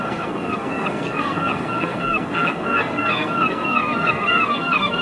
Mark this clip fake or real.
fake